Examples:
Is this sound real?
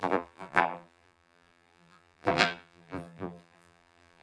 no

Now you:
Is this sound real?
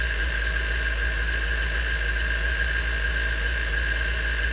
yes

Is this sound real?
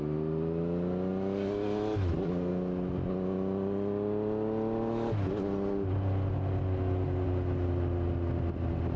yes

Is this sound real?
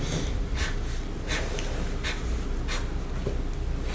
yes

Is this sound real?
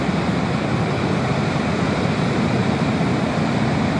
yes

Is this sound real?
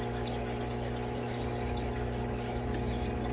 yes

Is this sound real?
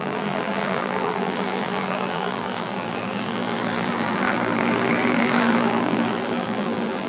no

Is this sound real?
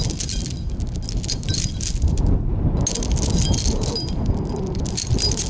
yes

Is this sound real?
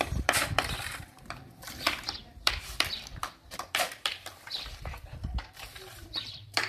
no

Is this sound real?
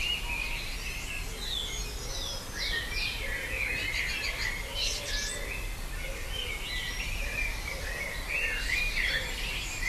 yes